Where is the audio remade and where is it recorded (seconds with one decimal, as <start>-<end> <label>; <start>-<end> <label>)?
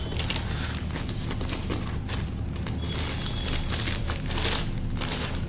0.0-5.5 recorded